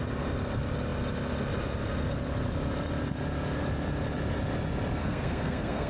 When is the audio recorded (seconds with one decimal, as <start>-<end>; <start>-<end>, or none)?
0.0-5.0